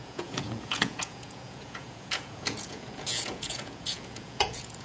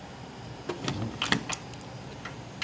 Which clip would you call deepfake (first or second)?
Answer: first